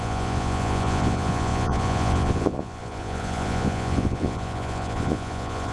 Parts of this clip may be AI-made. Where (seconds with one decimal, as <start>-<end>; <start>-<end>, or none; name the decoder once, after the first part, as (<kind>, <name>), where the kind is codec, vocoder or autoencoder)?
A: 0.0-5.7 (vocoder, Vocos)